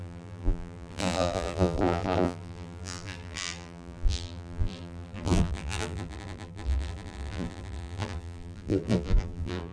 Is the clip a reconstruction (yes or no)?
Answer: yes